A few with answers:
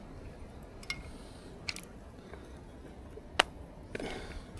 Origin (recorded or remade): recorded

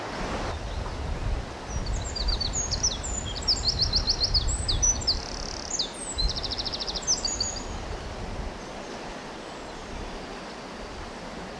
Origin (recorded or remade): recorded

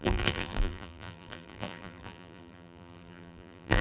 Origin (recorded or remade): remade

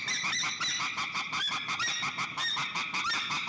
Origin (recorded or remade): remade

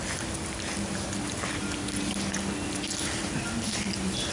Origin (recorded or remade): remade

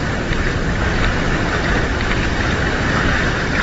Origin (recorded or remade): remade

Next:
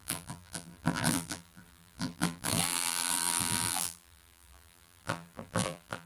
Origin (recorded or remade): remade